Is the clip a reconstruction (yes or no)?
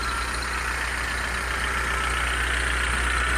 no